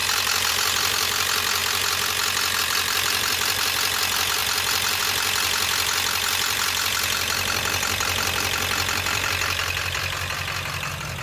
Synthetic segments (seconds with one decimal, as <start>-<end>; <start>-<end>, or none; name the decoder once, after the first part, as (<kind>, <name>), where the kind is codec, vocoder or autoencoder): 0.5-1.6 (vocoder, BigVGAN v2); 2.6-11.2